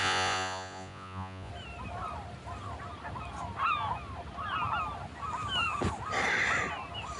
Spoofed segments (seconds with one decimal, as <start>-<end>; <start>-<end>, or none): 0.0-1.5